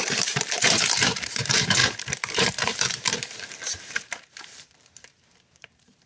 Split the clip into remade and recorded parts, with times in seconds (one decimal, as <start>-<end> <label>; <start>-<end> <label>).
0.0-6.1 remade